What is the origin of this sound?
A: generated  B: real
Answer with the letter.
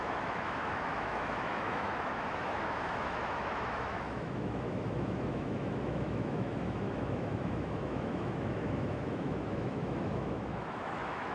A